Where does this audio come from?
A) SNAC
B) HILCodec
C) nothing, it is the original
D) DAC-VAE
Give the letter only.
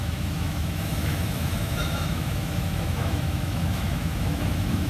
D